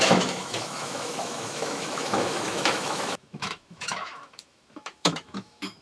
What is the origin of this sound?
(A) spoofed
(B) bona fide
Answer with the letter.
A